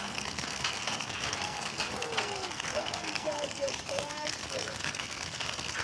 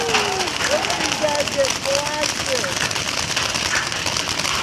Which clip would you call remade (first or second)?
first